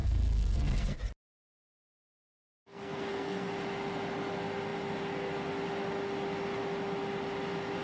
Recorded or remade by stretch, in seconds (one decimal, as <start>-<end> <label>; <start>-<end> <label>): 0.0-1.0 remade; 1.0-2.1 recorded; 2.1-3.5 remade; 3.5-7.8 recorded